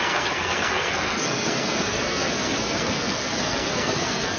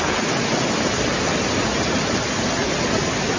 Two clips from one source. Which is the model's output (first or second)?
first